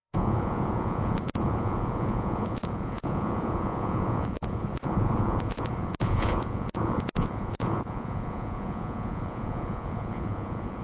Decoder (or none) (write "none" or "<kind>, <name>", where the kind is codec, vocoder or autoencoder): vocoder, Vocos